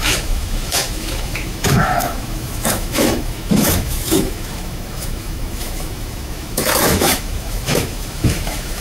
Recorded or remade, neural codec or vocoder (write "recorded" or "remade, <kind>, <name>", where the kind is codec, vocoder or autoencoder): remade, autoencoder, DAC-VAE